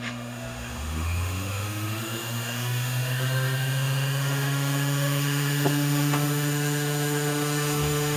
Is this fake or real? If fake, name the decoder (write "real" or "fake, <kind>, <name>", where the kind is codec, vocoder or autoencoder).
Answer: fake, autoencoder, DAC-VAE